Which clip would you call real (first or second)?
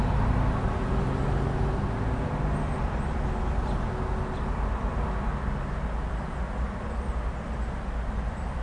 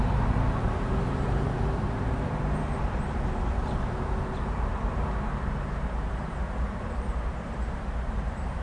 first